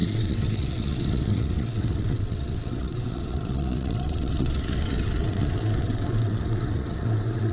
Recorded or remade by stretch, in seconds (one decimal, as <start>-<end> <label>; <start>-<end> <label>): 0.0-7.5 remade

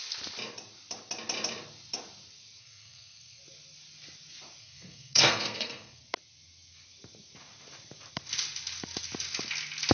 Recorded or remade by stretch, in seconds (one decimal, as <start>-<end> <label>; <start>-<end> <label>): 0.0-2.6 recorded; 2.6-3.4 remade; 3.4-4.6 recorded; 4.6-6.0 remade; 6.0-9.9 recorded

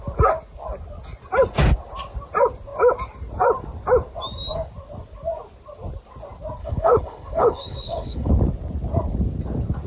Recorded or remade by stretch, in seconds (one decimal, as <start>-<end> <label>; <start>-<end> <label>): 0.0-6.6 recorded; 6.6-8.3 remade; 8.3-9.9 recorded

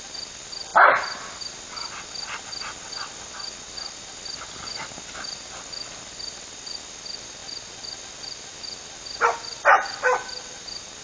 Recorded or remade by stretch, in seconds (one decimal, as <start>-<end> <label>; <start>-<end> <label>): 0.0-11.0 recorded